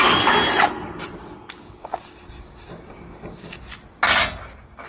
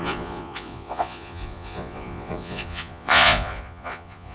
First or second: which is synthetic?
second